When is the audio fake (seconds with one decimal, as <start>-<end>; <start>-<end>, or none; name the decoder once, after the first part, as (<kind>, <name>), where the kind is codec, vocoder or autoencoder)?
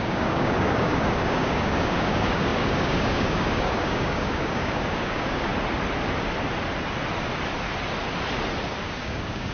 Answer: 0.0-5.5 (codec, DAC); 8.8-9.5